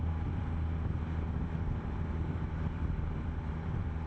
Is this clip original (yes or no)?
no